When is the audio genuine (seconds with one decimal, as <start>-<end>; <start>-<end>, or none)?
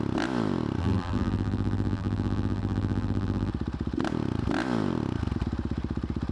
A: 0.0-0.8; 3.5-6.3